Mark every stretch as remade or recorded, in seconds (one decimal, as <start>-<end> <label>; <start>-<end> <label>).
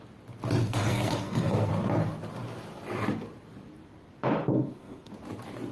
0.0-0.6 recorded; 0.6-1.7 remade; 1.7-4.5 recorded; 4.5-5.1 remade; 5.1-5.7 recorded